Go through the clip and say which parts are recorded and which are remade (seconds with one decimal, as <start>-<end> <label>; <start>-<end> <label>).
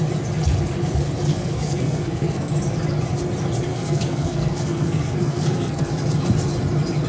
0.0-1.3 recorded; 1.3-2.5 remade; 2.5-3.7 recorded; 3.7-5.9 remade; 5.9-7.1 recorded